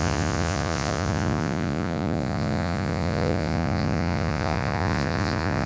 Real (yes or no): no